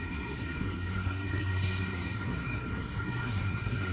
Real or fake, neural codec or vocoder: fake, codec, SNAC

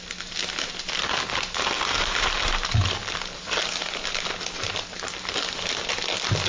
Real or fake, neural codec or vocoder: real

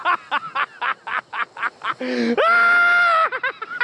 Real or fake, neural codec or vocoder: real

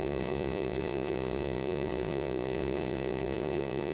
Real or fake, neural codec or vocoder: fake, vocoder, Vocos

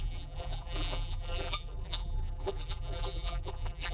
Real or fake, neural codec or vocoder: fake, vocoder, BigVGAN v2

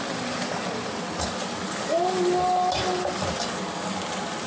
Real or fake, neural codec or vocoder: real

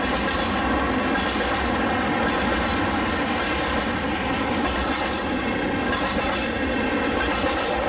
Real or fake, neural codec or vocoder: real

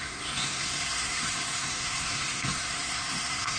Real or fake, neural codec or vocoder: fake, codec, SNAC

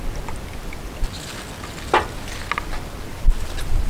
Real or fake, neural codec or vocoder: real